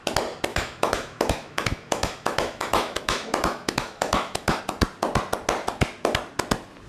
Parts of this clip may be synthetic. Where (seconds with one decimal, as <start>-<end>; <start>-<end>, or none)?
0.5-4.6